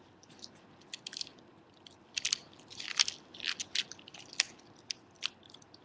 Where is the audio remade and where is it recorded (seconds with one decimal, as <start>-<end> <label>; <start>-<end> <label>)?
0.0-5.8 recorded